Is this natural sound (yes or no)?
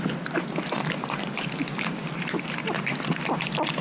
yes